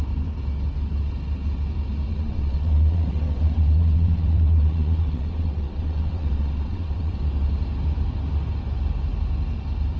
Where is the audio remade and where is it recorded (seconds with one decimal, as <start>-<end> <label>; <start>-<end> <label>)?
0.0-2.1 recorded; 2.1-7.1 remade; 7.1-10.0 recorded